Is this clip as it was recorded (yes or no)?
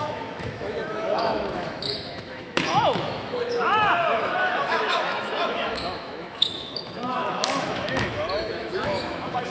no